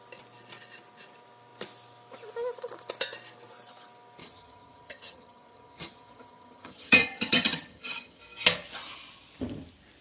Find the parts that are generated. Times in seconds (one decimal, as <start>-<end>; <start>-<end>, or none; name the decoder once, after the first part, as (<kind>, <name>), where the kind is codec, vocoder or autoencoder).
4.2-8.2 (vocoder, HiFi-GAN)